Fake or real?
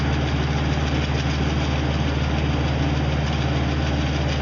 real